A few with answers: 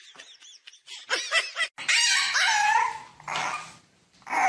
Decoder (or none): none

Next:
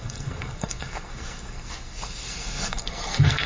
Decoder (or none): codec, SNAC